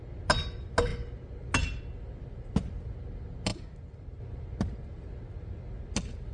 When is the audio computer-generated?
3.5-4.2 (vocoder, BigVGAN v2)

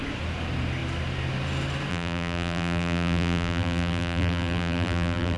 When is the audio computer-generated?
1.9-5.4 (vocoder, BigVGAN v2)

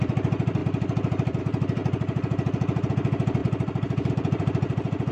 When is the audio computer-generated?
0.0-1.8 (vocoder, BigVGAN v2); 2.9-5.1

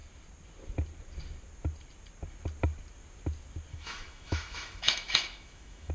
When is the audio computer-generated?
3.7-5.9 (autoencoder, DAC-VAE)